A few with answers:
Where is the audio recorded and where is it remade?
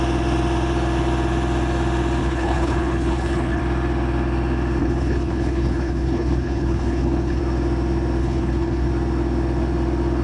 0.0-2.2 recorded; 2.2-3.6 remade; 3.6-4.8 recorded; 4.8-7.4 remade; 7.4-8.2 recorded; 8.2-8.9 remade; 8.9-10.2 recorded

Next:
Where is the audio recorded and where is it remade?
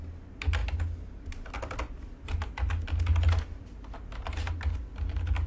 0.0-5.5 recorded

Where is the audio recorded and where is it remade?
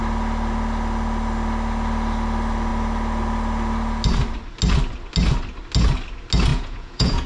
0.0-6.5 recorded; 6.5-7.3 remade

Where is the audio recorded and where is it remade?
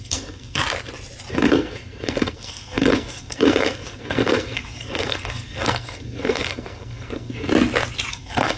0.0-0.6 remade; 0.6-1.3 recorded; 1.3-7.5 remade; 7.5-8.1 recorded; 8.1-8.6 remade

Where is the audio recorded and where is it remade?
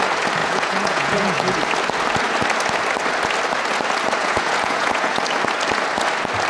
0.0-0.4 recorded; 0.4-1.6 remade; 1.6-4.2 recorded; 4.2-5.2 remade; 5.2-6.5 recorded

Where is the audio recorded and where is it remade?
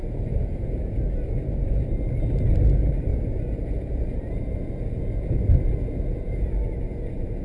0.0-0.9 remade; 0.9-3.1 recorded; 3.1-7.4 remade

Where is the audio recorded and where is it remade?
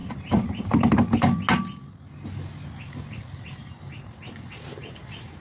0.0-0.9 remade; 0.9-5.4 recorded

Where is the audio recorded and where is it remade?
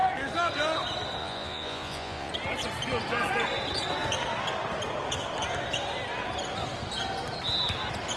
0.0-1.2 recorded; 1.2-2.3 remade; 2.3-8.2 recorded